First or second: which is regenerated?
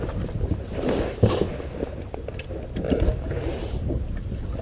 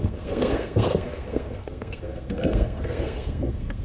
second